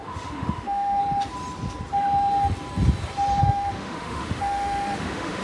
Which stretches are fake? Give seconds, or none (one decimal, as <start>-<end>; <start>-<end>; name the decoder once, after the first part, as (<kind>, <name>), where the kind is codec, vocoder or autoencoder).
0.0-1.0 (autoencoder, DAC-VAE); 3.4-5.4